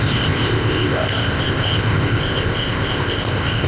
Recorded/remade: remade